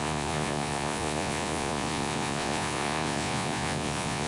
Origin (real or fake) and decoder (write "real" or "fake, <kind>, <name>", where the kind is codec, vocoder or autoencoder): fake, vocoder, Vocos